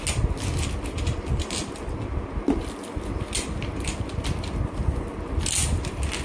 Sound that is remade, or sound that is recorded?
recorded